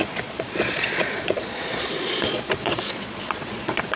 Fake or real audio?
fake